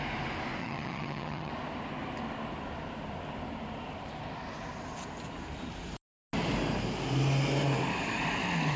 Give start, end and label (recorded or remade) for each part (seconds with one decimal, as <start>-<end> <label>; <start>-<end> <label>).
0.0-0.6 recorded; 0.6-1.5 remade; 1.5-8.8 recorded